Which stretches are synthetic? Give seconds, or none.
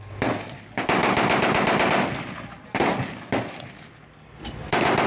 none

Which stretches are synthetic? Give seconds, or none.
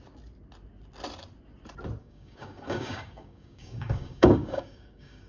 2.0-5.3 (codec, DAC)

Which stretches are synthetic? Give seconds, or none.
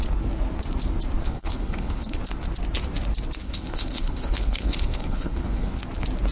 1.2-2.2 (codec, HILCodec); 3.4-5.8